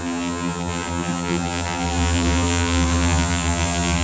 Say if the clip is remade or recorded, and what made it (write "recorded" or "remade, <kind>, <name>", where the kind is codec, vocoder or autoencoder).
remade, vocoder, BigVGAN v2